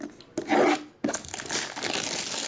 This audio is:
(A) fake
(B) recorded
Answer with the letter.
B